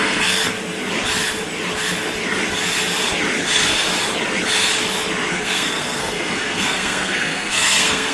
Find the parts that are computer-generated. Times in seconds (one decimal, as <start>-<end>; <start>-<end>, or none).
0.0-0.4; 5.3-8.1

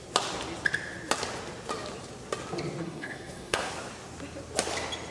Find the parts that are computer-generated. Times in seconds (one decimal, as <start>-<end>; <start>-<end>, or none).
2.8-3.7

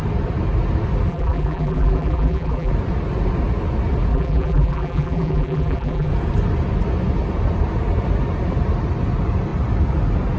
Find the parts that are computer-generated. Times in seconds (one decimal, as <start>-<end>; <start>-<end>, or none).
1.1-2.7; 4.1-6.1